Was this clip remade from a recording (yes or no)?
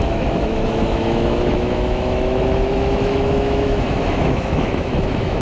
yes